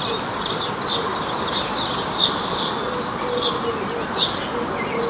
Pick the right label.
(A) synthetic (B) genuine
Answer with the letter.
B